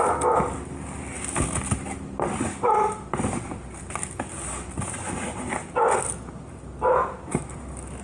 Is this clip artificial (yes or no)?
no